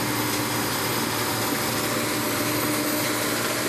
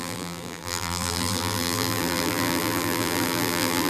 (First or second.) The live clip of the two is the first